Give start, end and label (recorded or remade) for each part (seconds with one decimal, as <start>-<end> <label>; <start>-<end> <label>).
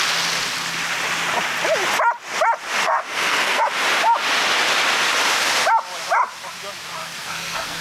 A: 0.0-2.8 recorded; 2.8-3.6 remade; 3.6-7.0 recorded; 7.0-7.8 remade